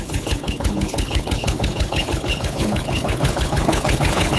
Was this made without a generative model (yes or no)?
no